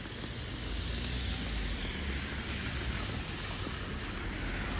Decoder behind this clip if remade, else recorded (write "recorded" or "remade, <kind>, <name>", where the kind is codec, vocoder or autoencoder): recorded